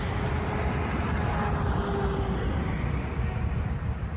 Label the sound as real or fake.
real